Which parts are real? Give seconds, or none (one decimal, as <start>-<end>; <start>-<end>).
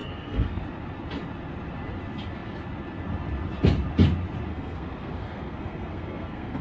0.6-4.5